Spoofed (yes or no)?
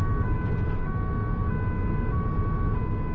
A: no